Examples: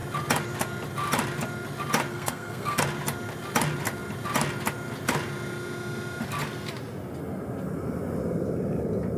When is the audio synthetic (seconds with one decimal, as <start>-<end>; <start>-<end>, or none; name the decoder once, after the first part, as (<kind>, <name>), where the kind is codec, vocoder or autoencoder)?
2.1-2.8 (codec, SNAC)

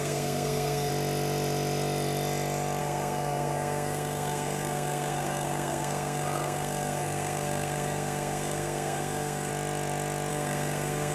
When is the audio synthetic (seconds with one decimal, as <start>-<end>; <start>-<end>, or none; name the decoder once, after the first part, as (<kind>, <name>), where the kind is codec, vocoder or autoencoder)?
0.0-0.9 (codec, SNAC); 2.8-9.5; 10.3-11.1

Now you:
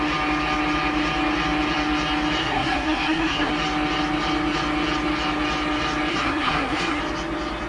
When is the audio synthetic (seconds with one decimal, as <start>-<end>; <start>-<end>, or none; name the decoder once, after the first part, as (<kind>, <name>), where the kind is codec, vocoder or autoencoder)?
2.4-3.5 (codec, SNAC); 6.1-7.0